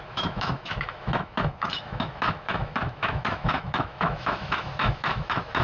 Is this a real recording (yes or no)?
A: no